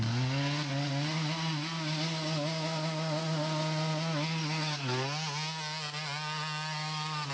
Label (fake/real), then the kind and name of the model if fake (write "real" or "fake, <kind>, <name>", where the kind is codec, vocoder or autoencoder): real